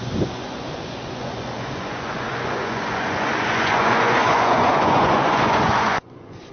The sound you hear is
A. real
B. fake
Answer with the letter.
B